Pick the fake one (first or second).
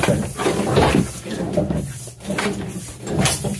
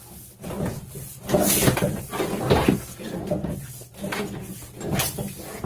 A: first